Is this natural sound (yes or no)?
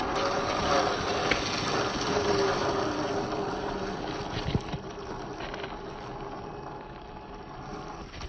yes